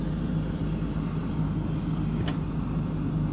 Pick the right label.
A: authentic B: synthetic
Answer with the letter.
B